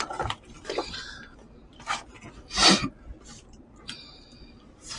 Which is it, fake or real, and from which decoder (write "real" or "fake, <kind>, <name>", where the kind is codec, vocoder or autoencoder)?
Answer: fake, vocoder, BigVGAN v2